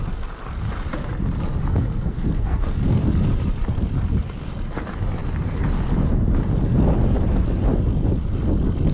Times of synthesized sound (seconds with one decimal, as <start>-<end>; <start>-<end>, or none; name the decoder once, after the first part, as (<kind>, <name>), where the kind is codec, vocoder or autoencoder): 1.7-3.0 (codec, SNAC)